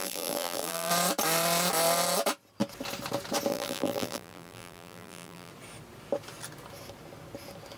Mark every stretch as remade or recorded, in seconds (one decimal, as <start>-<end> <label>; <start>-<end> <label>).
0.0-0.9 remade; 0.9-3.5 recorded; 3.5-5.5 remade; 5.5-7.8 recorded